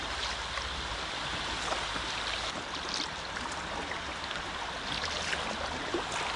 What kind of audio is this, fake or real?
real